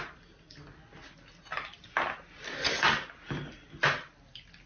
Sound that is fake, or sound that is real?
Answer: real